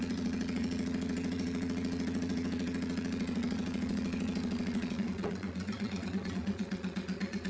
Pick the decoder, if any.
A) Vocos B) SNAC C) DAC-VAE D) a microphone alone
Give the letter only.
A